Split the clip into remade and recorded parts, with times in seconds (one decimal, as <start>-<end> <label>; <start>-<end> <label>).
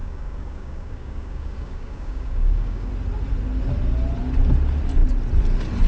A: 0.0-2.9 remade; 2.9-5.9 recorded